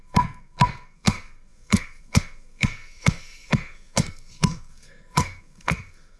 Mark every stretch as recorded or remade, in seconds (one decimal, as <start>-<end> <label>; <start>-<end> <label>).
0.0-6.2 remade

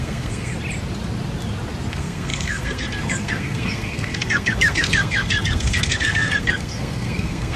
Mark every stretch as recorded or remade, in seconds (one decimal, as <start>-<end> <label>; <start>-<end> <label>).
0.0-0.5 remade; 0.5-1.9 recorded; 1.9-7.6 remade

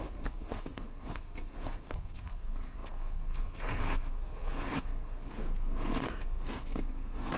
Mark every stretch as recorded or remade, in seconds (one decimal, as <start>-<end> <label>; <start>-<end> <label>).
0.0-7.4 remade

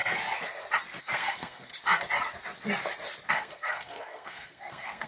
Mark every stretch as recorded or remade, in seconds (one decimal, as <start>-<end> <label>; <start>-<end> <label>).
0.0-1.0 recorded; 1.0-1.7 remade; 1.7-3.3 recorded; 3.3-5.1 remade

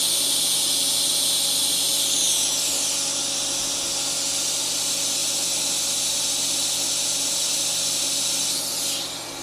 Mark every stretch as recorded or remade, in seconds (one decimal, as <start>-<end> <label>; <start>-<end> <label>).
0.0-9.4 recorded

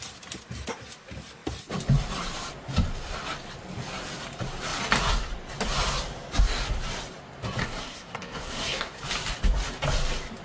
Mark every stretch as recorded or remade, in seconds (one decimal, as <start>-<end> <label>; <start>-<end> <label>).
0.0-7.6 recorded; 7.6-9.0 remade; 9.0-10.4 recorded

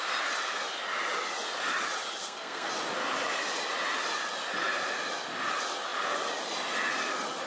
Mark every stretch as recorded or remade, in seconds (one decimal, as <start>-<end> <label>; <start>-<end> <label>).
0.0-2.2 recorded; 2.2-2.7 remade; 2.7-7.5 recorded

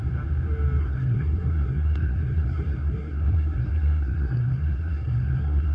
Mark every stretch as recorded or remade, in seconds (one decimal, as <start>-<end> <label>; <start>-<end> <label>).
0.0-0.8 recorded; 0.8-5.7 remade